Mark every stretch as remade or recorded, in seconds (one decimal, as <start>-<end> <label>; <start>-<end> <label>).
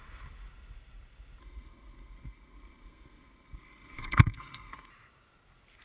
0.0-1.4 recorded; 1.4-4.9 remade; 4.9-5.8 recorded